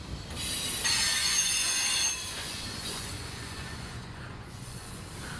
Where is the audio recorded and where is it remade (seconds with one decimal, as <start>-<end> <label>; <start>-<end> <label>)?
0.0-1.2 recorded; 1.2-1.8 remade; 1.8-2.4 recorded; 2.4-5.0 remade; 5.0-5.4 recorded